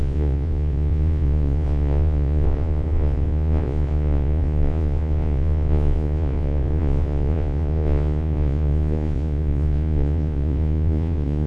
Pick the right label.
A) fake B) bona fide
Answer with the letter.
A